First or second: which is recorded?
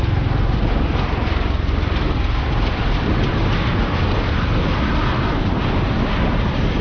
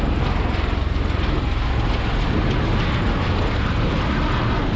second